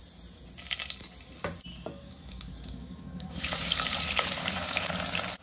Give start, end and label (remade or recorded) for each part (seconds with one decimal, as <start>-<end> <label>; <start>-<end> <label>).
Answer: 0.0-1.7 recorded; 1.7-4.9 remade; 4.9-5.4 recorded